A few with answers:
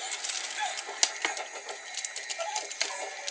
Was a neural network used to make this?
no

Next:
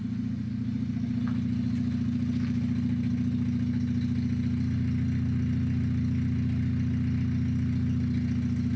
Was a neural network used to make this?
no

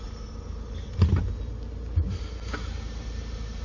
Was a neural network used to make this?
no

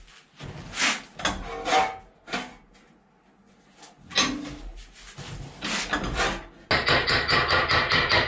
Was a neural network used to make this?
no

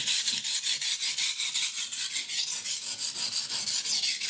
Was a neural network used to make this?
no